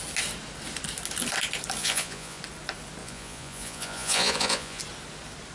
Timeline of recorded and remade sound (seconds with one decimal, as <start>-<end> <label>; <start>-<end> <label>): 0.0-1.8 recorded; 1.8-2.4 remade; 2.4-3.0 recorded; 3.0-4.8 remade; 4.8-5.5 recorded